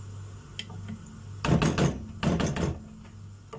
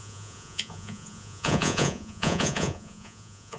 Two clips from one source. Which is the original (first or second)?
first